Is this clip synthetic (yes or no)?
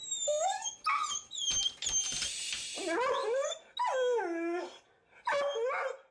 no